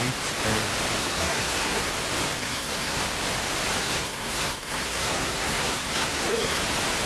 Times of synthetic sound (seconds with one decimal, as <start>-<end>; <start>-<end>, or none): 1.0-1.9; 2.4-3.0; 3.8-6.6